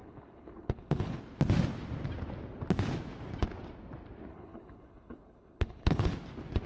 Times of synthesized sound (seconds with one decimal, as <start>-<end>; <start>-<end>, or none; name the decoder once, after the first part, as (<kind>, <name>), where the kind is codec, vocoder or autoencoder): 0.0-1.2 (codec, HILCodec); 4.3-6.1